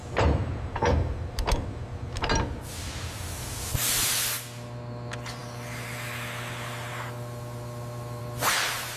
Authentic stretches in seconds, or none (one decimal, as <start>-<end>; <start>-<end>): 0.0-9.0